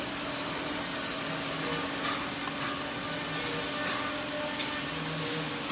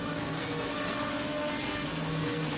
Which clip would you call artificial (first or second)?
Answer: second